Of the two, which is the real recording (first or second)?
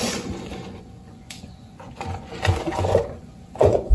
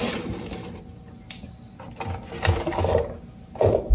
second